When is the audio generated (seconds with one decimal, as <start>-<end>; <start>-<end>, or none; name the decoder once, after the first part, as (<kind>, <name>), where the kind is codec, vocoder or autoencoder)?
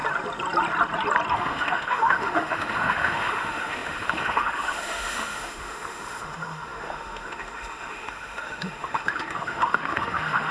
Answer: 1.3-10.5 (autoencoder, DAC-VAE)